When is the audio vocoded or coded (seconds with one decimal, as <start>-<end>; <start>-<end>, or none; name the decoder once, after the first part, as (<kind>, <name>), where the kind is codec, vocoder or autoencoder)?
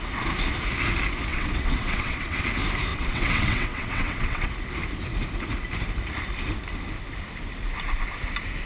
1.3-2.4 (vocoder, WaveNeXt); 2.9-4.5